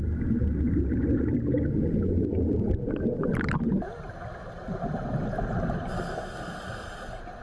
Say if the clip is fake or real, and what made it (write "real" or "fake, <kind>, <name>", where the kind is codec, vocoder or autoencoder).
real